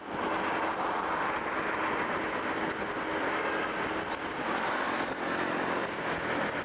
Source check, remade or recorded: recorded